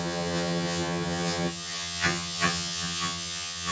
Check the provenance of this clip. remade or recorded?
remade